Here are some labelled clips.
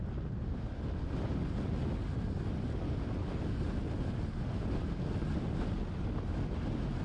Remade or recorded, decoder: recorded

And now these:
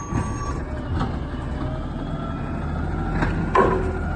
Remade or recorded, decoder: recorded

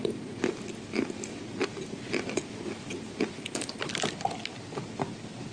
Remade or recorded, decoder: recorded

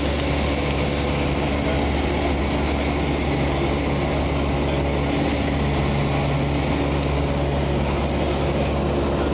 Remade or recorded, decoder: recorded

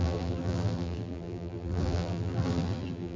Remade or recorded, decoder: remade, vocoder, BigVGAN v2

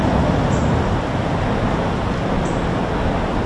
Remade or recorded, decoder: recorded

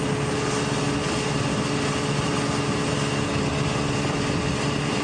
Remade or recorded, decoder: recorded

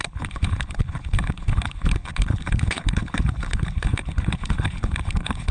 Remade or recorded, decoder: remade, codec, HILCodec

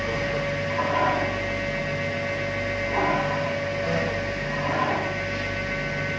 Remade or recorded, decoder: recorded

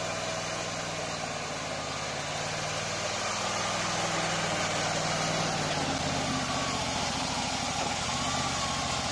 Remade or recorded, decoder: recorded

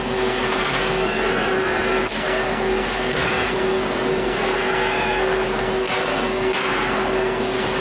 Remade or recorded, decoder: remade, codec, SNAC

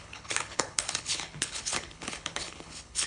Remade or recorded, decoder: remade, codec, HILCodec